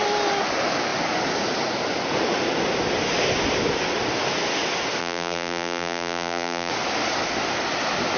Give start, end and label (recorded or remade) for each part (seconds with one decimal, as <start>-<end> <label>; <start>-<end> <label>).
0.0-5.0 recorded; 5.0-6.7 remade; 6.7-8.2 recorded